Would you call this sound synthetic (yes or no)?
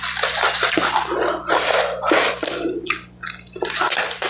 no